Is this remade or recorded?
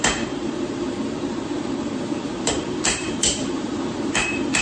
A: remade